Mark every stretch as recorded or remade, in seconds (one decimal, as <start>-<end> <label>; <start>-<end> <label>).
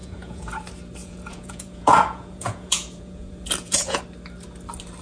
0.0-0.5 remade; 0.5-1.0 recorded; 1.0-4.0 remade; 4.0-5.0 recorded